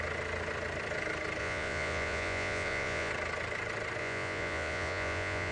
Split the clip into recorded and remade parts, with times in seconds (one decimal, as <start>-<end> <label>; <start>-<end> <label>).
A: 0.0-1.4 recorded; 1.4-3.1 remade; 3.1-4.0 recorded; 4.0-5.5 remade

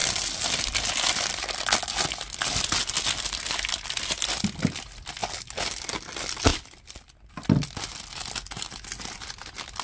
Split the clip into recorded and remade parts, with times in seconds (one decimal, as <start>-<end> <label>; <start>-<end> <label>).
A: 0.0-9.8 recorded

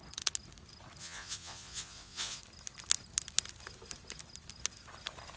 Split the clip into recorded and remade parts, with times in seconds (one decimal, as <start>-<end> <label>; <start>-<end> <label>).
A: 0.0-1.0 recorded; 1.0-2.4 remade; 2.4-5.4 recorded

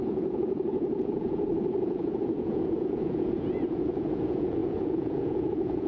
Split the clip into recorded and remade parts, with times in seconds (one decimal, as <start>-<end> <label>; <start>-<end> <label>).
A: 0.0-5.9 remade